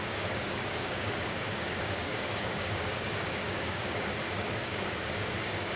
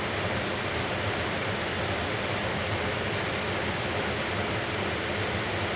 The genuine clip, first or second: second